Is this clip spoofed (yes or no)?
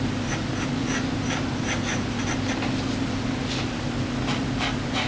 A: no